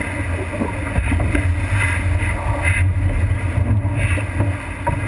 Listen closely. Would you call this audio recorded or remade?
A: recorded